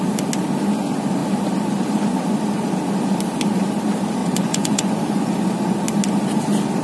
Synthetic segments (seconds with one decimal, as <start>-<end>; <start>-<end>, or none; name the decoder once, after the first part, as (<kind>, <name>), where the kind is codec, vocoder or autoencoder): 4.2-5.3 (vocoder, Vocos)